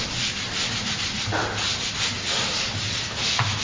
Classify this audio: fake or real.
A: real